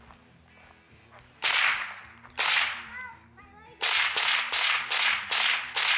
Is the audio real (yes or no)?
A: yes